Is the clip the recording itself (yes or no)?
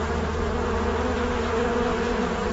yes